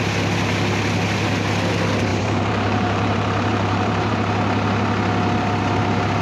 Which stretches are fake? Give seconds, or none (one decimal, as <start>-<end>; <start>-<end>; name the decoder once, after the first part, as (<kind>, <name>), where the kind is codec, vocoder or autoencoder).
2.1-4.1 (vocoder, BigVGAN v2)